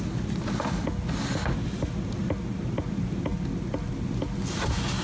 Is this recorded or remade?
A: recorded